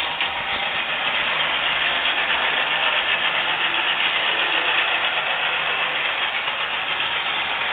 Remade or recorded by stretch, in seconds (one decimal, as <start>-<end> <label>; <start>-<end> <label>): 0.0-7.7 recorded